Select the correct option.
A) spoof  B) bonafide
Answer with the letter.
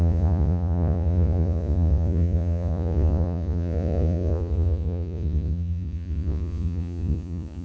A